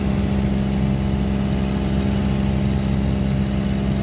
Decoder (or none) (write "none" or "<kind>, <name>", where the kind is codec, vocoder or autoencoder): none